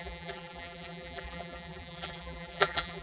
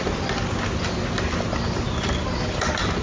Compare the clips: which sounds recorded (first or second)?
second